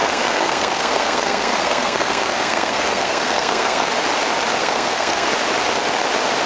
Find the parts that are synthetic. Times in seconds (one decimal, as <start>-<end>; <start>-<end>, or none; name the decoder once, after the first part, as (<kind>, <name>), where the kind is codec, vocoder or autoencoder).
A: 0.0-3.9 (codec, SNAC); 4.6-5.3